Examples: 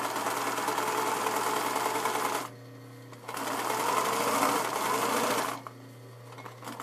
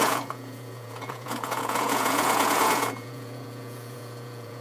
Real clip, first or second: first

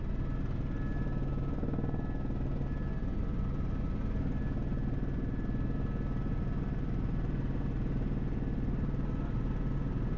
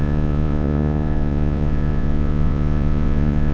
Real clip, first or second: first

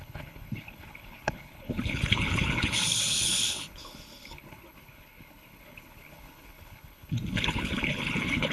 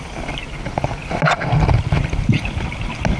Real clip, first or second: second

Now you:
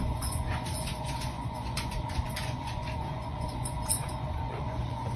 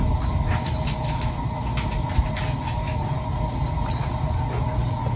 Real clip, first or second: second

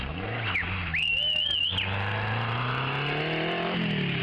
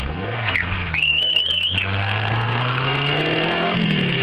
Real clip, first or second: first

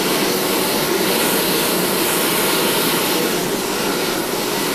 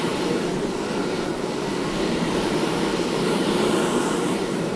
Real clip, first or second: first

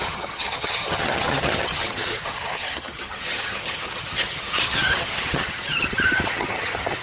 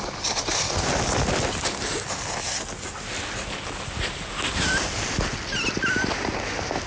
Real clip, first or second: second